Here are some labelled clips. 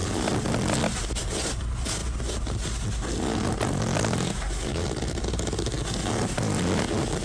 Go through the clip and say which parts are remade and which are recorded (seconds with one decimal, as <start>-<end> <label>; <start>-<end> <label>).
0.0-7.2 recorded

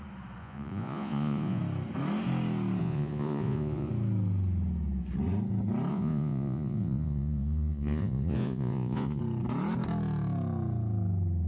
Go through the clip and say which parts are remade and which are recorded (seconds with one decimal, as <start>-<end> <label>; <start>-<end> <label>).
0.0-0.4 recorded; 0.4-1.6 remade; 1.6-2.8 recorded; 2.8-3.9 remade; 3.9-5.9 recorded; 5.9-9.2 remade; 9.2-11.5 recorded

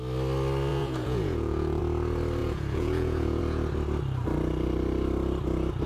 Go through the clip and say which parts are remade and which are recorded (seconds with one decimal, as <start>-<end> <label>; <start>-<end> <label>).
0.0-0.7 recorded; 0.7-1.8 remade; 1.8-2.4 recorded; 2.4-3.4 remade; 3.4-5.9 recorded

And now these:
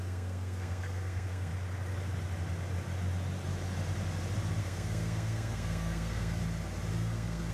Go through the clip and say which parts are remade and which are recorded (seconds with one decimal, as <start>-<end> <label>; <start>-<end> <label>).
0.0-1.5 remade; 1.5-4.6 recorded; 4.6-6.4 remade; 6.4-6.9 recorded; 6.9-7.5 remade

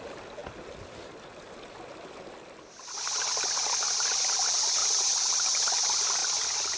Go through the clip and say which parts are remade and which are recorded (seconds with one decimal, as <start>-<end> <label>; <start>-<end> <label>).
0.0-4.8 recorded; 4.8-5.3 remade; 5.3-6.8 recorded

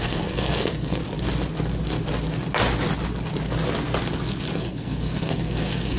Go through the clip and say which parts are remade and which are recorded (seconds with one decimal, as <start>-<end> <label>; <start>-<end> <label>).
0.0-1.0 remade; 1.0-4.6 recorded; 4.6-6.0 remade